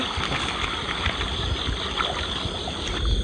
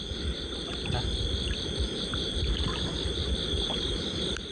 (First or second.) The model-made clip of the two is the second